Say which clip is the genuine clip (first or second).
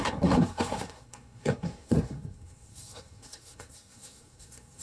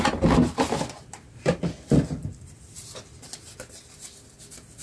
second